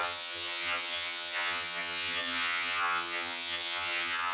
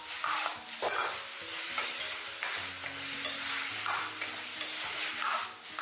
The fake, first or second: first